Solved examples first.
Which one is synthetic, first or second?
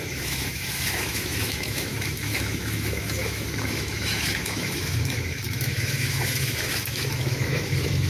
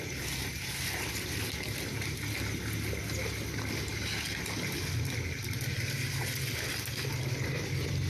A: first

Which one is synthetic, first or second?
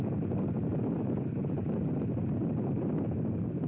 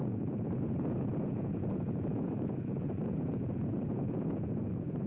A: second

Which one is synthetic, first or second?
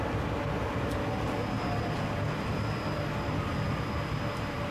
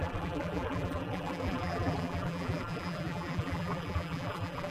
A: second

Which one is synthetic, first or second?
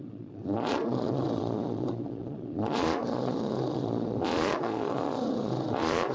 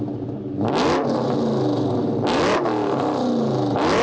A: first